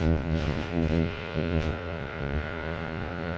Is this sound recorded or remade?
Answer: remade